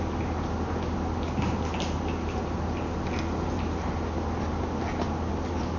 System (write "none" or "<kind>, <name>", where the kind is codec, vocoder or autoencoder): none